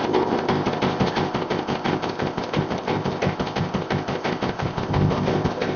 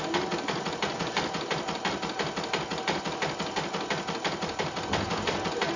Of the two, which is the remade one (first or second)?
first